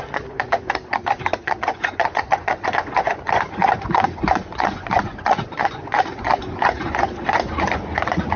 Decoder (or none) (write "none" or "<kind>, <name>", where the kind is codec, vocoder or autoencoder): vocoder, Vocos